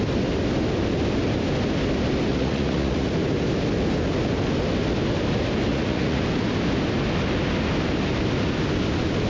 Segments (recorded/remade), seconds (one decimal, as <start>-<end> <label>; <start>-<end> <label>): 0.0-2.3 recorded; 2.3-3.1 remade; 3.1-5.7 recorded; 5.7-6.2 remade; 6.2-9.3 recorded